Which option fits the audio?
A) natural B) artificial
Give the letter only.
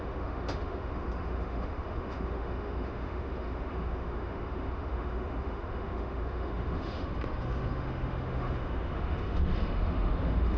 B